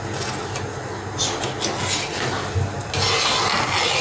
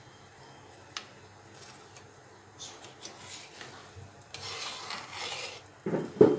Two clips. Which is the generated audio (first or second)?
second